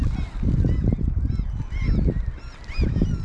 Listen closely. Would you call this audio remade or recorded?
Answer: recorded